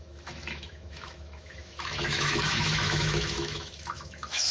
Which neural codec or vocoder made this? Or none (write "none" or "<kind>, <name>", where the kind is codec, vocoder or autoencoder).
autoencoder, DAC-VAE